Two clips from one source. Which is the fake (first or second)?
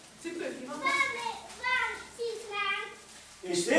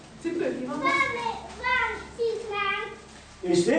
first